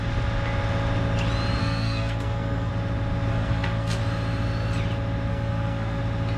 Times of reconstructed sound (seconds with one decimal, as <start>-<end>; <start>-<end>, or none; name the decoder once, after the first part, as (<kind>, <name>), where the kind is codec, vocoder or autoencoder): 1.6-2.7 (codec, SNAC); 3.3-4.0; 5.3-6.0

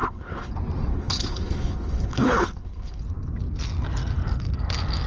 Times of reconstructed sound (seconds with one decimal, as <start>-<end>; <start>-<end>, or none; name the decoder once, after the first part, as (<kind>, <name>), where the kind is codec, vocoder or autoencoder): 0.0-0.5 (codec, HILCodec); 0.9-3.0

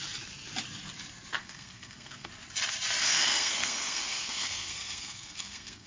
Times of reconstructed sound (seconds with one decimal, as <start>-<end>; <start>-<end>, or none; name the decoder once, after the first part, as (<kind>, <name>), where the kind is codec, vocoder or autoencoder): 1.4-2.3 (codec, SNAC); 3.0-5.9

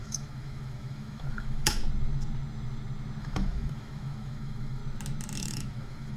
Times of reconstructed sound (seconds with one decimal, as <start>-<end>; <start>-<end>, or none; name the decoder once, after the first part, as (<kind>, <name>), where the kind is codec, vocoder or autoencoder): 0.0-1.8 (autoencoder, DAC-VAE); 3.2-4.8; 5.4-6.2